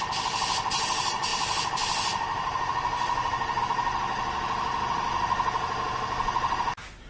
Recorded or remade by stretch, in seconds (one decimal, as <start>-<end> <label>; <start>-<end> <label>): 0.0-7.1 recorded